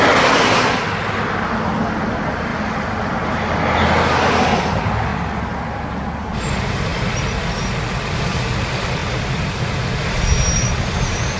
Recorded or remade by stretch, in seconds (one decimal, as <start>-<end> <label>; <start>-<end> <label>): 0.0-2.5 recorded; 2.5-3.1 remade; 3.1-5.1 recorded; 5.1-6.5 remade; 6.5-6.9 recorded; 6.9-7.4 remade; 7.4-9.0 recorded; 9.0-10.0 remade; 10.0-11.4 recorded